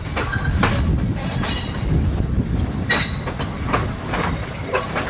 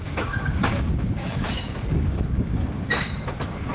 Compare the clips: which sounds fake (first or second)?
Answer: second